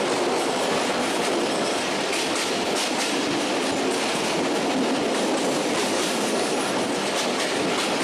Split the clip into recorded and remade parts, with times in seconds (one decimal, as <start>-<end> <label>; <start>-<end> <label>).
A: 0.0-5.8 recorded; 5.8-6.5 remade; 6.5-8.0 recorded

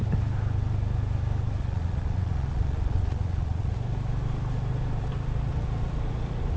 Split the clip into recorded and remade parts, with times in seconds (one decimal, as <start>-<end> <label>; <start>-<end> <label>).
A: 0.0-1.6 recorded; 1.6-3.7 remade; 3.7-6.6 recorded

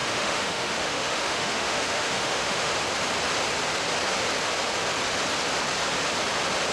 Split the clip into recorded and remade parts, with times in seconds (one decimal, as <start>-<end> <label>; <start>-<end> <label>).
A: 0.0-2.7 remade; 2.7-6.7 recorded

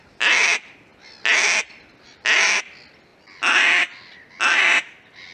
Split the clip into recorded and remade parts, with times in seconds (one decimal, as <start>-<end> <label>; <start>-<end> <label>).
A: 0.0-5.3 recorded

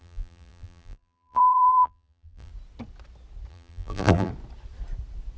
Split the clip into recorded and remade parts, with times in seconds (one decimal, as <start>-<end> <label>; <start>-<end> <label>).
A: 0.0-2.5 remade; 2.5-3.5 recorded; 3.5-4.3 remade; 4.3-5.4 recorded

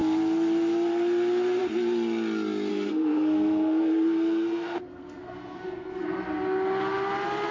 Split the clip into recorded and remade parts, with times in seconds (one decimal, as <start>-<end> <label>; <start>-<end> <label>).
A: 0.0-2.7 recorded; 2.7-6.2 remade; 6.2-7.5 recorded